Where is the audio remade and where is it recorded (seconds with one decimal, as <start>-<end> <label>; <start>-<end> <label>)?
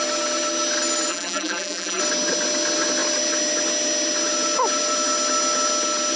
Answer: 0.0-1.1 recorded; 1.1-2.0 remade; 2.0-6.2 recorded